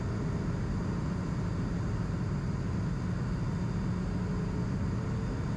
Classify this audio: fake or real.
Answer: real